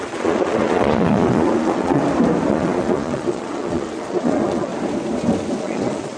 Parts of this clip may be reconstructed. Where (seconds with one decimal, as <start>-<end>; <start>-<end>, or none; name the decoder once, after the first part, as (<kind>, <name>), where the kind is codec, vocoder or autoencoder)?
0.0-2.0 (vocoder, Vocos); 2.5-4.7; 5.6-6.2